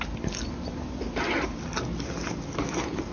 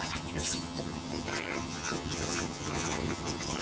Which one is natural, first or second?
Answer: first